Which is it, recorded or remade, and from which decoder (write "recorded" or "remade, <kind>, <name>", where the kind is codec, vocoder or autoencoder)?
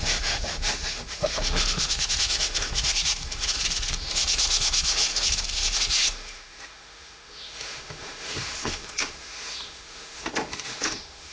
remade, autoencoder, DAC-VAE